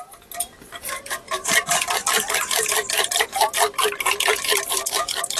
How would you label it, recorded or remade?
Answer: recorded